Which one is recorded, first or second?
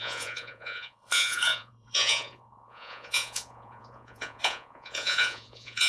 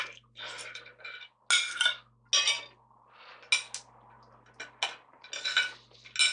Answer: second